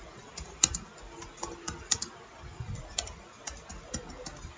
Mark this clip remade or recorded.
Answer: recorded